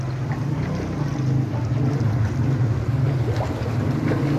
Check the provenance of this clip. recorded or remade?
recorded